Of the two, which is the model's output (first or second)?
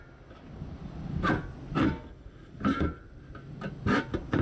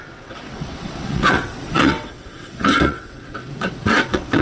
second